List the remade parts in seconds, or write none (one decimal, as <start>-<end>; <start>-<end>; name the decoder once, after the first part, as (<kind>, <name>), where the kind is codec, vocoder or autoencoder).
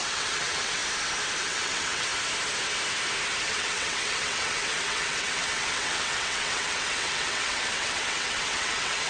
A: 0.0-0.8 (vocoder, WaveNeXt); 1.4-2.1; 3.4-9.1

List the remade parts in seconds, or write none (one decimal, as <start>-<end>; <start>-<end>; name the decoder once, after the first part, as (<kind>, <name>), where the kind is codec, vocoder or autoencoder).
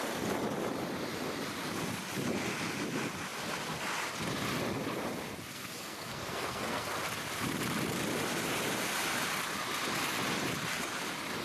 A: 5.5-7.0 (codec, SNAC)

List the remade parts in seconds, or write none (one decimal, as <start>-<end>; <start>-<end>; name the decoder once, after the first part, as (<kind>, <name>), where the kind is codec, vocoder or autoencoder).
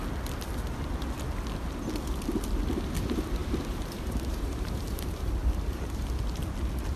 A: 3.4-6.1 (vocoder, BigVGAN v2)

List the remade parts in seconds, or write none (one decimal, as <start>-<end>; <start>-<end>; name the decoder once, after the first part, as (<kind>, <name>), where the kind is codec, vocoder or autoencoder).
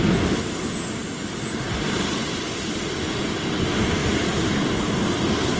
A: 1.0-2.9 (vocoder, BigVGAN v2); 4.0-5.6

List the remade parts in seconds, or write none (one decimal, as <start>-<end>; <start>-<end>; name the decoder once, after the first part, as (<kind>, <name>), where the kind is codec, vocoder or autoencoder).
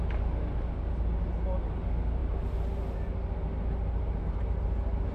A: none